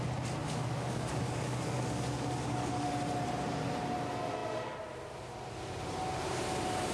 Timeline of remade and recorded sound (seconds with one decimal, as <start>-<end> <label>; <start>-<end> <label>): 0.0-0.4 recorded; 0.4-2.9 remade; 2.9-6.9 recorded